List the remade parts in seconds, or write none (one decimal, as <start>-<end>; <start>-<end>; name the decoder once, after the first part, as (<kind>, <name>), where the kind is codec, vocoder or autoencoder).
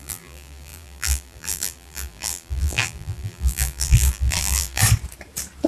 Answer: 0.0-4.8 (vocoder, BigVGAN v2)